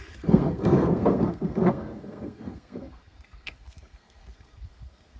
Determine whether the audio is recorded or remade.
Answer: remade